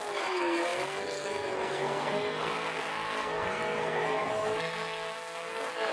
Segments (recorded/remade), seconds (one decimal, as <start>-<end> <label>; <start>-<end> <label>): 0.0-5.9 remade